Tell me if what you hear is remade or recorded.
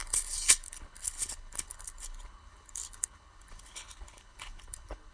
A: remade